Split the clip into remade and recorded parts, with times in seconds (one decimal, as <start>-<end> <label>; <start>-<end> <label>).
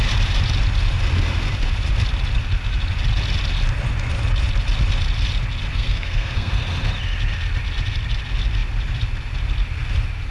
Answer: 0.0-5.7 recorded; 5.7-6.5 remade; 6.5-10.3 recorded